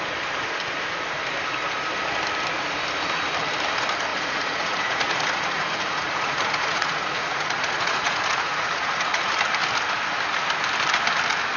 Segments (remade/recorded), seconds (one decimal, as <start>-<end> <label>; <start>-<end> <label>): 0.0-4.1 recorded; 4.1-9.3 remade; 9.3-11.6 recorded